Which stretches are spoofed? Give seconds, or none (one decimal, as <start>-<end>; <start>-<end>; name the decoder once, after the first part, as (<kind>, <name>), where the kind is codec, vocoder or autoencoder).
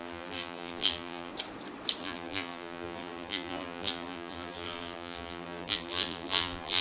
0.0-1.3 (vocoder, BigVGAN v2); 2.0-6.8